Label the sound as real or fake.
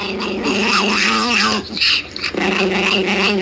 real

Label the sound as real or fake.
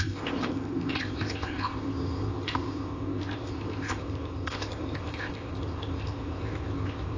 fake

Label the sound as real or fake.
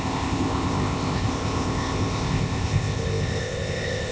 fake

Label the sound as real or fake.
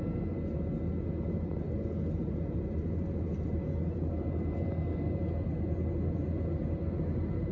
real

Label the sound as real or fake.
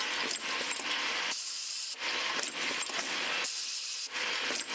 real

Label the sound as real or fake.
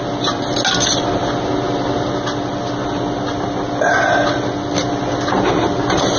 real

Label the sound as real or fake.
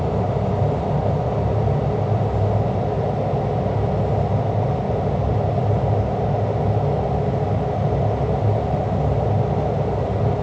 real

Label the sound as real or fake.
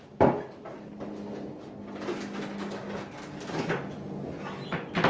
real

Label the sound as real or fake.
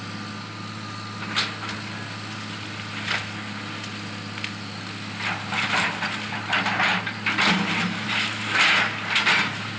real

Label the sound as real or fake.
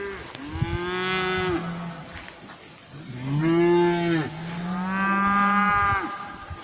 real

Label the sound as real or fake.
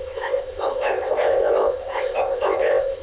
fake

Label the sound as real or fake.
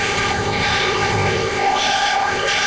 fake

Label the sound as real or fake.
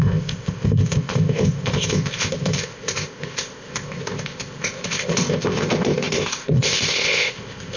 fake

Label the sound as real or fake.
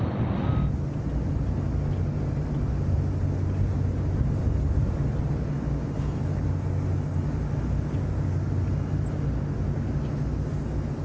real